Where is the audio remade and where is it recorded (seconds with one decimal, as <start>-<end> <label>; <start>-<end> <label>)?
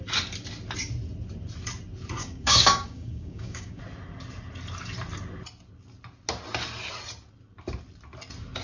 0.0-2.2 recorded; 2.2-3.8 remade; 3.8-8.6 recorded